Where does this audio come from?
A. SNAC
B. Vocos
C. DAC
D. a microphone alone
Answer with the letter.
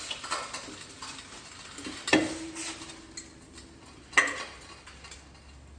D